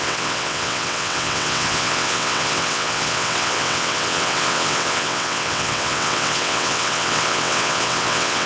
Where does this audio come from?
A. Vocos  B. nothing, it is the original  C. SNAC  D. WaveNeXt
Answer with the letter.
D